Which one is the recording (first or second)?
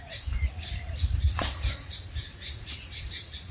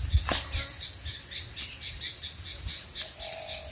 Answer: second